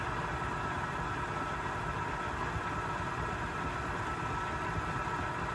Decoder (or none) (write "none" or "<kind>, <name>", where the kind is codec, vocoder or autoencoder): none